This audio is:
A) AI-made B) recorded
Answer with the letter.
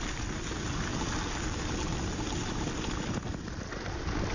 B